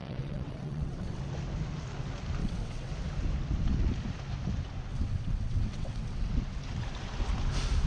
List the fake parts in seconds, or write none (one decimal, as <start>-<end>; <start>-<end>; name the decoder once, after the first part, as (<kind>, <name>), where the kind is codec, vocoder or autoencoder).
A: 0.0-1.2 (vocoder, WaveNeXt); 2.4-2.9; 4.9-6.3